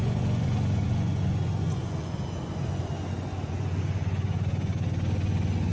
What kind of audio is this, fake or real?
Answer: fake